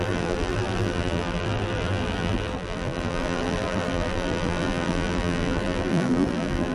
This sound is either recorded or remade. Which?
remade